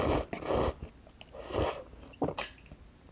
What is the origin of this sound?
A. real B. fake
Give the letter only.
A